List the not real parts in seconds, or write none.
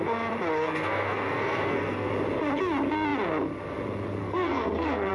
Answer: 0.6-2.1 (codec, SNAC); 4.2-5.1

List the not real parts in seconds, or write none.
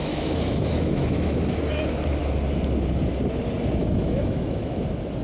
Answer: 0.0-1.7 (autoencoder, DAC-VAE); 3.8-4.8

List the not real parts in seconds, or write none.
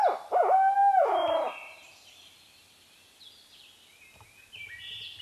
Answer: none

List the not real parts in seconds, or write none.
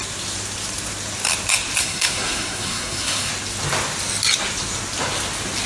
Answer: 1.8-3.3 (codec, SNAC)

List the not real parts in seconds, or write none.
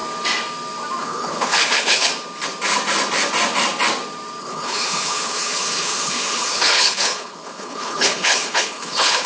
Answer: 1.0-2.1 (codec, HILCodec); 4.4-9.3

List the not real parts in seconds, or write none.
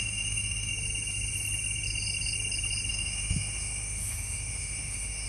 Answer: 0.0-0.7 (autoencoder, DAC-VAE); 2.9-5.3